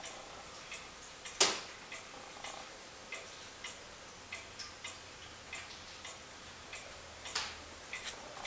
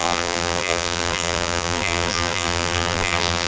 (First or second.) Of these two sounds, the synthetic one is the second